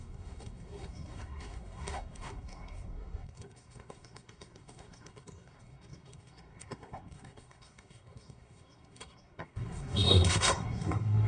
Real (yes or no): no